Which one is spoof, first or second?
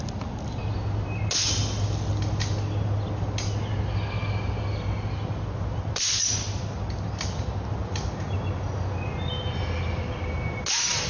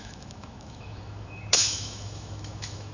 second